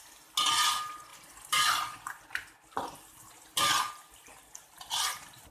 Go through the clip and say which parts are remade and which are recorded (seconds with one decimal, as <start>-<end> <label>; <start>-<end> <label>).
0.0-1.1 recorded; 1.1-4.4 remade; 4.4-5.5 recorded